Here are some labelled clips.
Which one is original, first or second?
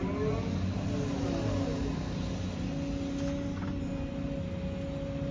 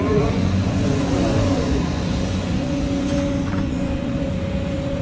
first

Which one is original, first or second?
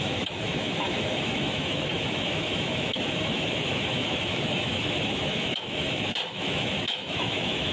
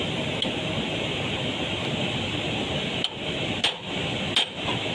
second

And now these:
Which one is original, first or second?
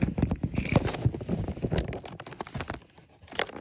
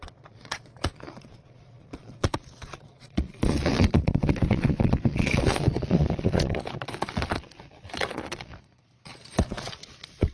first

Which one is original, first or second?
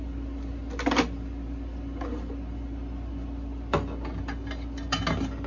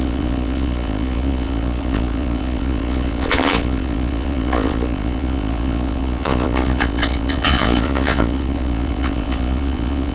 first